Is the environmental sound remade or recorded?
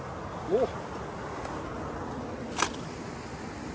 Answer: recorded